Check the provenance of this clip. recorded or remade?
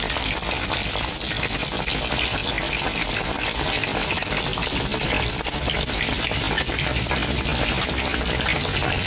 recorded